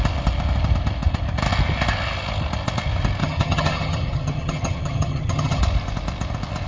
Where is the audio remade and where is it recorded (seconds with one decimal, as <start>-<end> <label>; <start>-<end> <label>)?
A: 0.0-3.2 recorded; 3.2-5.6 remade; 5.6-6.7 recorded

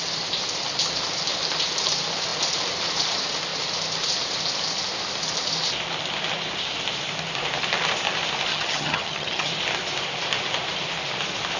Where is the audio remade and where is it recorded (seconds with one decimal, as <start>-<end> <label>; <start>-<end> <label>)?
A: 0.0-8.5 recorded; 8.5-9.5 remade; 9.5-11.6 recorded

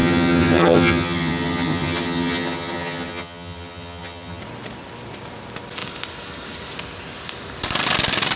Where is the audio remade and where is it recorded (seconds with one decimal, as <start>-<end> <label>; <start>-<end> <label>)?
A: 0.0-4.4 remade; 4.4-8.4 recorded

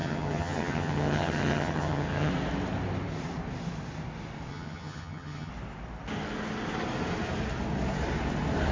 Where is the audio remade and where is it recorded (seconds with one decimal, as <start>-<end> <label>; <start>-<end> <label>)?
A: 0.0-2.3 remade; 2.3-4.5 recorded; 4.5-5.5 remade; 5.5-8.7 recorded